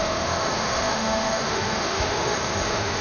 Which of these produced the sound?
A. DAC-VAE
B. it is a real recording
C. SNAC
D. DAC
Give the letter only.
A